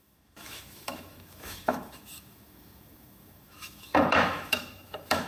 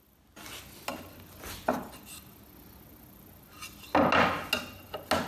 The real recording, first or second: second